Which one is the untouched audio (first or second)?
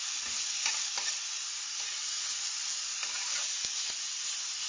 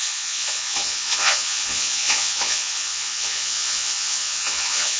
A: first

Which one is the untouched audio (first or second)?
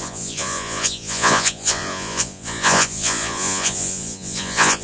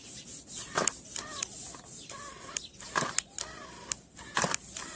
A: second